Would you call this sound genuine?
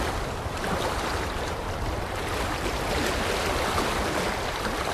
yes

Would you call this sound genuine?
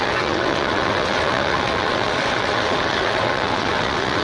no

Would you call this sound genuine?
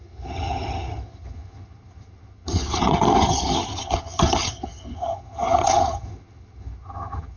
no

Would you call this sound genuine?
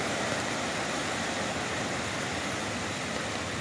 yes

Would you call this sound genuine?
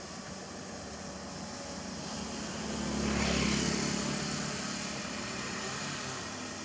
yes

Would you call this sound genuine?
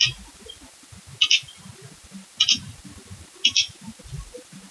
yes